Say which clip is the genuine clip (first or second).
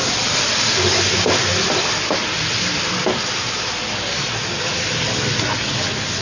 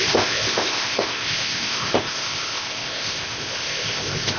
first